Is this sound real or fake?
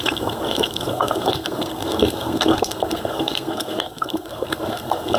fake